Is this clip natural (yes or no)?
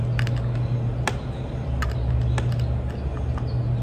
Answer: yes